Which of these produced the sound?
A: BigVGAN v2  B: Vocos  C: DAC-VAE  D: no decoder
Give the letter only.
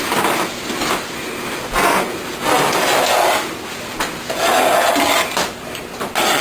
D